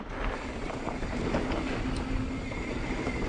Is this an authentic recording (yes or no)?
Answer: yes